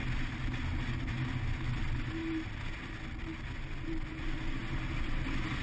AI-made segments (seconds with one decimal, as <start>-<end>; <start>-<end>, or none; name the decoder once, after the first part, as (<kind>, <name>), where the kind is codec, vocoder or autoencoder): none